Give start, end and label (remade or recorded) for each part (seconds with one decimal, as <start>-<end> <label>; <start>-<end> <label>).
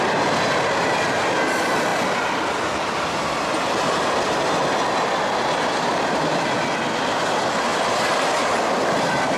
0.0-9.4 recorded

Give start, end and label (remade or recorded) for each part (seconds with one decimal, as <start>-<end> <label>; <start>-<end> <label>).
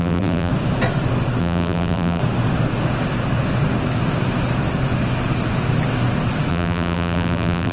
0.0-0.5 remade; 0.5-1.4 recorded; 1.4-2.2 remade; 2.2-6.5 recorded; 6.5-7.7 remade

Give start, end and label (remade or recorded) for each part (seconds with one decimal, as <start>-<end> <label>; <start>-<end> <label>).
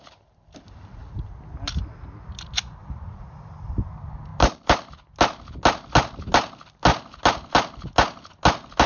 0.0-2.8 recorded; 2.8-3.9 remade; 3.9-4.3 recorded; 4.3-4.9 remade; 4.9-8.9 recorded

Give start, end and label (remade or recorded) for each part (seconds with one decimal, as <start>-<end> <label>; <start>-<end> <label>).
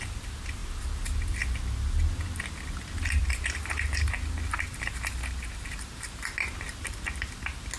0.0-3.2 recorded; 3.2-6.2 remade; 6.2-7.8 recorded